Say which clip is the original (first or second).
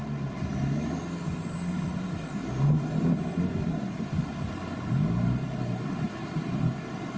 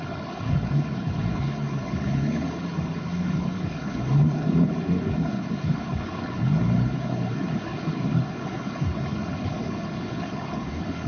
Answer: first